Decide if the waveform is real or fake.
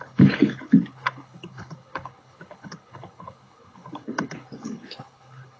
fake